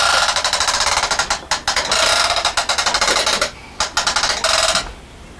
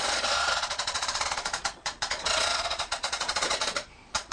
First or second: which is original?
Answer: first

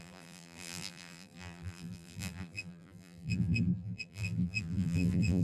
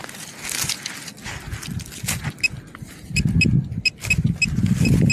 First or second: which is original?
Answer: second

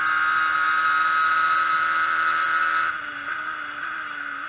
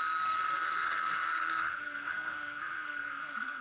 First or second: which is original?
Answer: first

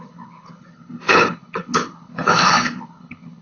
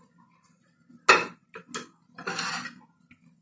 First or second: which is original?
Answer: second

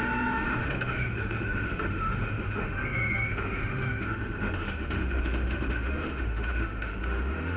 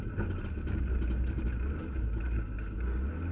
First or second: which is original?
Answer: second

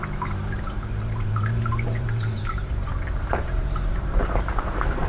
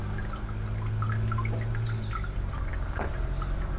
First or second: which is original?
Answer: second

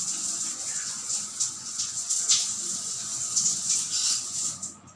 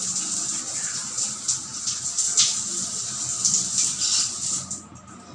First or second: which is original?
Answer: second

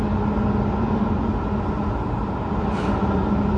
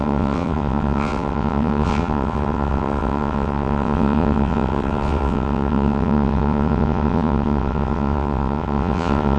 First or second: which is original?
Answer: first